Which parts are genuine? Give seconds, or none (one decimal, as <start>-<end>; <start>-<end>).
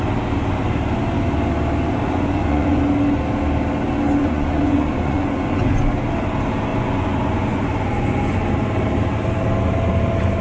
0.0-2.0; 2.8-4.2; 5.6-6.7; 8.5-10.4